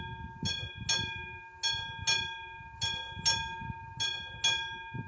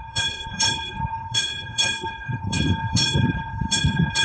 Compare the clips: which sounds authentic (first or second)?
first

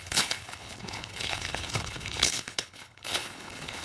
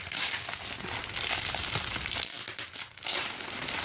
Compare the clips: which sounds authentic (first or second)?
second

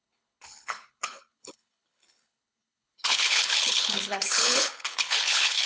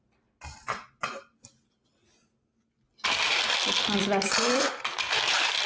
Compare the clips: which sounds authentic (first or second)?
second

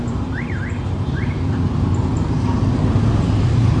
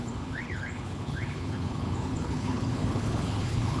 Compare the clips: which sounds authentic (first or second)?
first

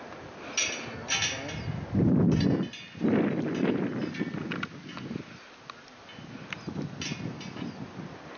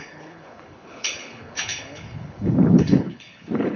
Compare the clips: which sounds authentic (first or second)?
first